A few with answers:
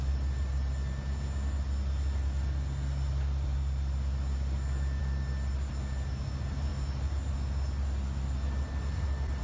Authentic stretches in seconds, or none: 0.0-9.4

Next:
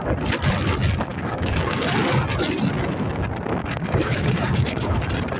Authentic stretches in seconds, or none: 0.0-1.1; 1.9-3.6; 5.0-5.4

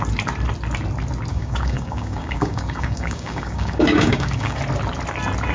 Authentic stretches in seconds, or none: 0.0-1.3; 4.6-5.5